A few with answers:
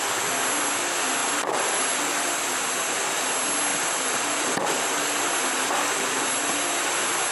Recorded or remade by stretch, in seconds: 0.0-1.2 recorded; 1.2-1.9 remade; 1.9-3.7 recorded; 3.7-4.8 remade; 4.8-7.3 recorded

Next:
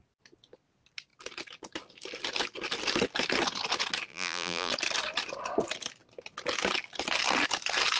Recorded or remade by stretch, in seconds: 0.0-4.1 recorded; 4.1-4.7 remade; 4.7-8.0 recorded

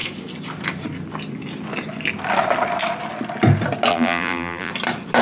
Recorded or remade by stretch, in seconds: 0.0-3.9 recorded; 3.9-4.7 remade; 4.7-5.2 recorded

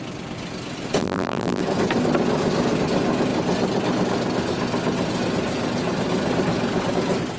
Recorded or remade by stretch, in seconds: 0.0-1.0 recorded; 1.0-1.6 remade; 1.6-7.4 recorded